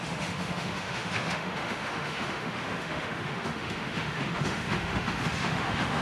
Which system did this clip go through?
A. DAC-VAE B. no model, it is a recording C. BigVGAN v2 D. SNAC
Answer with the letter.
A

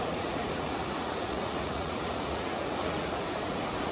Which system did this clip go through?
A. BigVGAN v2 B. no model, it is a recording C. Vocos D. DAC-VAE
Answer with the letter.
C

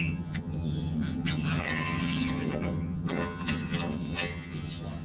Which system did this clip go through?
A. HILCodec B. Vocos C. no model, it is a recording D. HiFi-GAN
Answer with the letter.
D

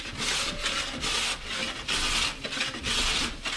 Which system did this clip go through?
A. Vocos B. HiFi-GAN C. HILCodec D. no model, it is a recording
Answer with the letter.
D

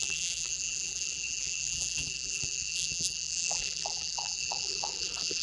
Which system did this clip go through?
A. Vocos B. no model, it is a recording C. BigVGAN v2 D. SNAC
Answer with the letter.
C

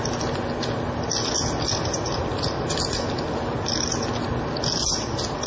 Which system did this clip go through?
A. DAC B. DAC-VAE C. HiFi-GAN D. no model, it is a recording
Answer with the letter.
D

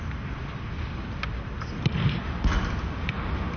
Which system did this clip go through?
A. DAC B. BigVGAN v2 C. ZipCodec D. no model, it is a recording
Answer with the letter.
D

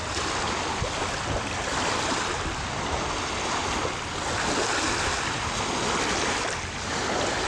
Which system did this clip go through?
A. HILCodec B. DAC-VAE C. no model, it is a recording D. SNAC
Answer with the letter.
C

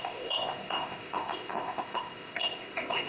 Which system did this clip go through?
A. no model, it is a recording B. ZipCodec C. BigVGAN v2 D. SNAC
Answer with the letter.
B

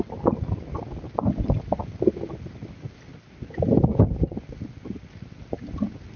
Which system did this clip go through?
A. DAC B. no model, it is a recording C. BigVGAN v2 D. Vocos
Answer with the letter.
B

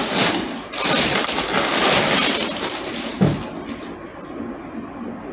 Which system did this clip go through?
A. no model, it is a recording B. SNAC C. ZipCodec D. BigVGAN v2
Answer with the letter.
A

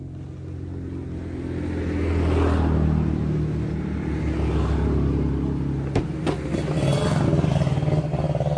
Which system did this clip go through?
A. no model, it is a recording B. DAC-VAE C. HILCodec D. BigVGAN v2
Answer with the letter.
A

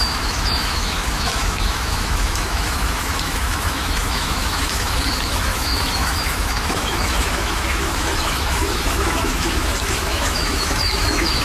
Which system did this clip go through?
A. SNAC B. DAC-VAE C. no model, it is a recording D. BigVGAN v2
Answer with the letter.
B